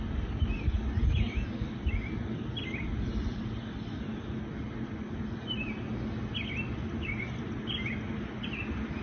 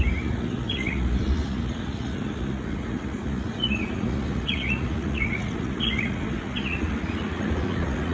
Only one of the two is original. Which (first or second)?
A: first